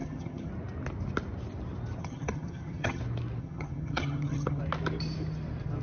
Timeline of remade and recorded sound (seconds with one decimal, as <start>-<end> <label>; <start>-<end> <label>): 0.0-0.5 remade; 0.5-2.0 recorded; 2.0-3.0 remade; 3.0-3.4 recorded; 3.4-4.6 remade; 4.6-5.8 recorded